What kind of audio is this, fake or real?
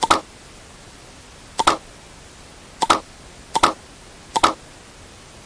real